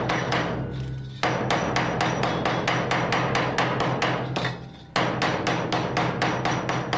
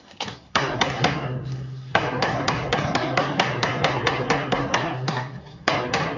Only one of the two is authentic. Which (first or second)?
first